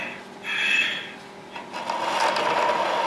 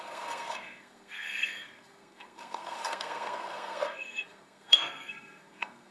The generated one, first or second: second